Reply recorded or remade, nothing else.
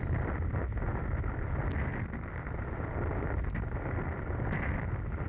recorded